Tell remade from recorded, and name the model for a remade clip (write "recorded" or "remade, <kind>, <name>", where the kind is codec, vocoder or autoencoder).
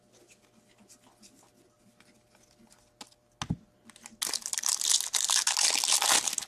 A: recorded